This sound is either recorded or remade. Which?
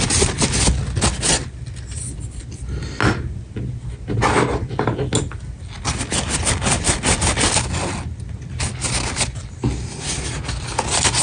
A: recorded